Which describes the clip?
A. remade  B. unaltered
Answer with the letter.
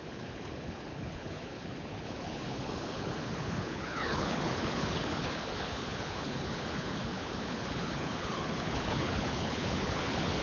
A